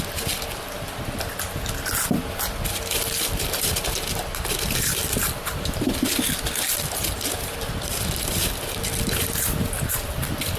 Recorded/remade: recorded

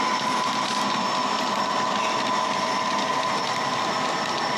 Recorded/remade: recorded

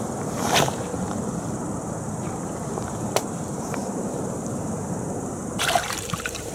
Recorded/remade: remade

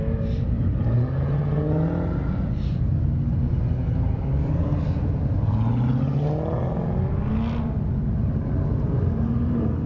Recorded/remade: recorded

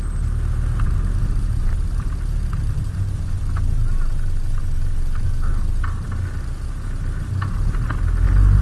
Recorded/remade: recorded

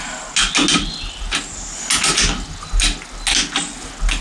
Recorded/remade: recorded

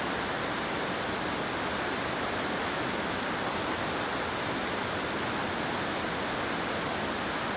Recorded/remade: recorded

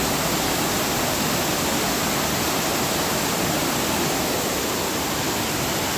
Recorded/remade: recorded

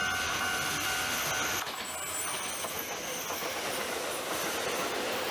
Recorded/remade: recorded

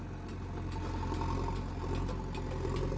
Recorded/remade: recorded